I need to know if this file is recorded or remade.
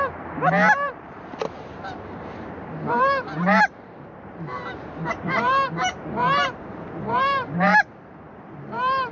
remade